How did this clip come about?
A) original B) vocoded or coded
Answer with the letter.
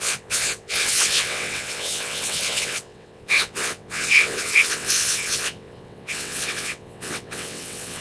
B